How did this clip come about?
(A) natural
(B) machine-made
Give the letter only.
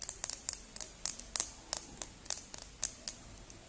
A